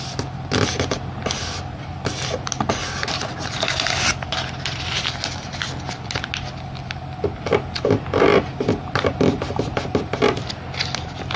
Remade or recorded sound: recorded